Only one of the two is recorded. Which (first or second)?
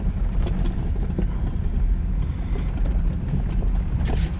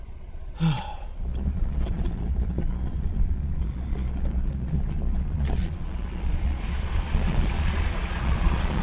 first